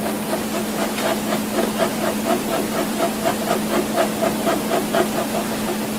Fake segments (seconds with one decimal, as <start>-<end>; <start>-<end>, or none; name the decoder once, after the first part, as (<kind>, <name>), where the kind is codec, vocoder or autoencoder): none